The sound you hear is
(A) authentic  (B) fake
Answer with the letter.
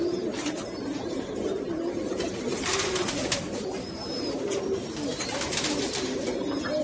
B